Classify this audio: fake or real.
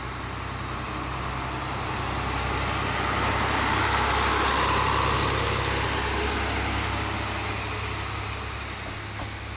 real